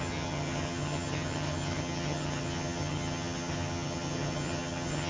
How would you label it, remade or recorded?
remade